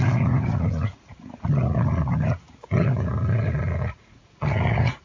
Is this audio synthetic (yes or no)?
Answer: yes